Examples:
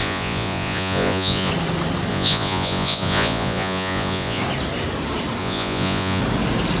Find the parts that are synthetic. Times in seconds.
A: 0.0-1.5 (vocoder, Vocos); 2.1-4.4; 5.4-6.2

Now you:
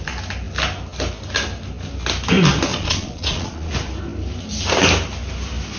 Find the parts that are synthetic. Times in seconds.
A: 2.7-3.7 (vocoder, Vocos)